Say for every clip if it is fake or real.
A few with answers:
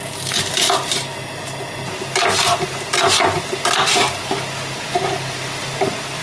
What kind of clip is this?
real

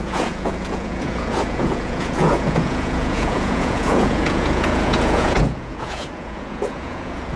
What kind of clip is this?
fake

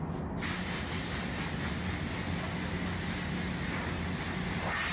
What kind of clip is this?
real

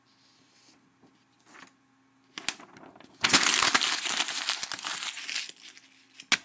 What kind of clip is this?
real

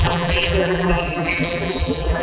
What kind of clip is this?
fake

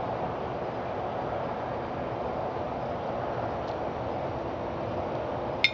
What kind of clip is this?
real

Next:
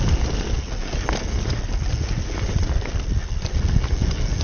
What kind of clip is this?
real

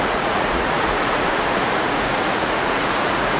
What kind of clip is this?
fake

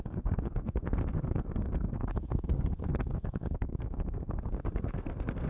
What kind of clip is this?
fake